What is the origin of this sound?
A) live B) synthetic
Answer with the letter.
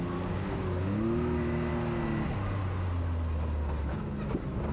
A